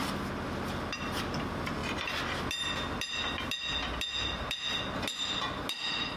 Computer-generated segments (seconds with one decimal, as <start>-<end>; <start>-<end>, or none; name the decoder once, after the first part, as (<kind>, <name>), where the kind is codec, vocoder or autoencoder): none